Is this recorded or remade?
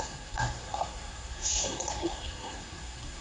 remade